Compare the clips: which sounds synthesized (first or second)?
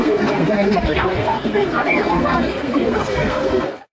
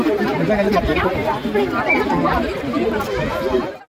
first